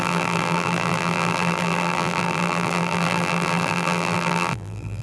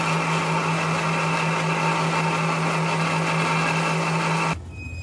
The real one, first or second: second